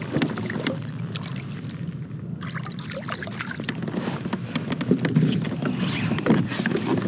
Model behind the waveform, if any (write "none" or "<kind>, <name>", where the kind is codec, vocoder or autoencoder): none